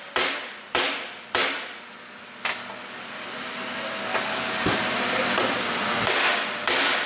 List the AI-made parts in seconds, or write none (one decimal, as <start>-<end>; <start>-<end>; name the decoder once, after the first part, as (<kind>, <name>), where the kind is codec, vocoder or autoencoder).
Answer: none